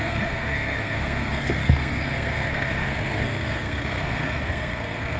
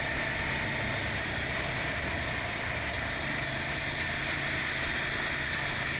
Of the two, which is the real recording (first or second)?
second